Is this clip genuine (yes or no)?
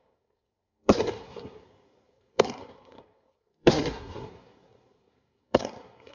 no